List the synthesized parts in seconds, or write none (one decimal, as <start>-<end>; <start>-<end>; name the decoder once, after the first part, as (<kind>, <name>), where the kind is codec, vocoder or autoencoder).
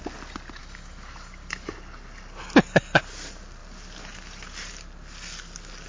0.6-1.7 (autoencoder, DAC-VAE)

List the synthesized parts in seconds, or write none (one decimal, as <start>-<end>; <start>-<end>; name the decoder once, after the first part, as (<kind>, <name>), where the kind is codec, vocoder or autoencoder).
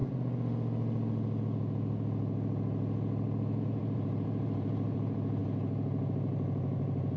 3.6-7.2 (vocoder, BigVGAN v2)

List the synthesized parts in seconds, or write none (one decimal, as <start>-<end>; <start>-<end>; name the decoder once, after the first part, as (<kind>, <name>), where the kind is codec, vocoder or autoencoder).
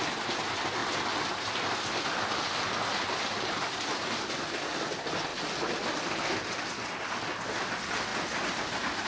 none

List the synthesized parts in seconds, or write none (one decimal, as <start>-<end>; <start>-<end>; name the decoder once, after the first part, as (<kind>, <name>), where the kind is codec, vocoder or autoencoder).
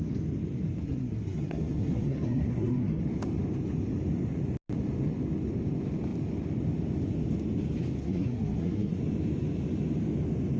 0.8-3.0 (codec, SNAC); 8.0-9.0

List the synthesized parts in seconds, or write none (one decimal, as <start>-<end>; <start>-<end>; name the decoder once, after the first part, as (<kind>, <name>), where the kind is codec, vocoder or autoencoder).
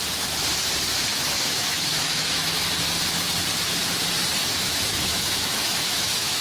1.1-2.7 (autoencoder, DAC-VAE); 4.4-6.4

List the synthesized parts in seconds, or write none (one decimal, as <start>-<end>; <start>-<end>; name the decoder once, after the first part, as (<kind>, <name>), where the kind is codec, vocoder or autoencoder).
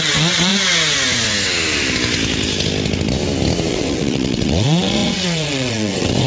0.0-0.5 (vocoder, WaveNeXt); 3.7-6.3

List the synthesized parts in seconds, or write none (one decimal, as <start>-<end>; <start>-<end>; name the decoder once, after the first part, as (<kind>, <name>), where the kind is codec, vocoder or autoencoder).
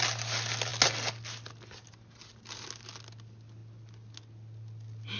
none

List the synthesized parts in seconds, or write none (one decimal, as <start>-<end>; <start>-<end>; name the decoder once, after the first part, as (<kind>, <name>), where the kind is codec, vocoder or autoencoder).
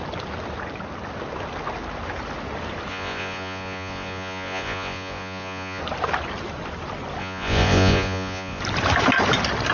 2.9-5.8 (vocoder, Vocos); 7.2-8.6